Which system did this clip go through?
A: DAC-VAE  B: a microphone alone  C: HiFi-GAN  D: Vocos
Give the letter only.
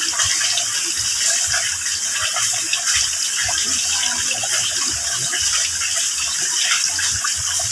B